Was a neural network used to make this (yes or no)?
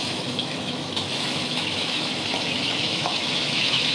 yes